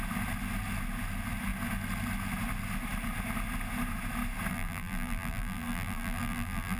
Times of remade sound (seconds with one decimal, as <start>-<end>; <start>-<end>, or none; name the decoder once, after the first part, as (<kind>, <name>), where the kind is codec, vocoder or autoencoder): 4.5-6.8 (vocoder, BigVGAN v2)

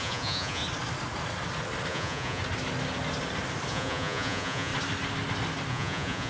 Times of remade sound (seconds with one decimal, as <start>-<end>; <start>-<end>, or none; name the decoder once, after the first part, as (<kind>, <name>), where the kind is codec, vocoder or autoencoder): 0.0-0.6 (vocoder, Vocos); 1.9-2.4; 3.7-4.7; 5.7-6.3